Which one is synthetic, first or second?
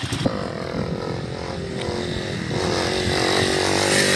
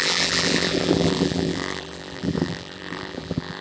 second